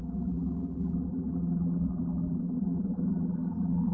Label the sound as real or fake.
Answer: fake